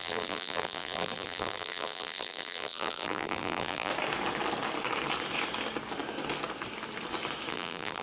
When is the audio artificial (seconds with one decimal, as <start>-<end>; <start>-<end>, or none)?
0.0-3.9; 7.5-8.0